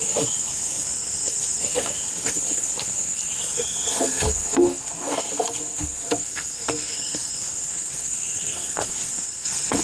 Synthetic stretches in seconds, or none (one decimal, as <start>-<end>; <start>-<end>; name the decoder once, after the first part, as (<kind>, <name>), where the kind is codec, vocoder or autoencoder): 0.0-9.8 (codec, SNAC)